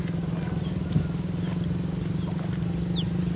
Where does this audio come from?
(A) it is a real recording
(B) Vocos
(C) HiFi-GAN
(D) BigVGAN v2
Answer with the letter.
A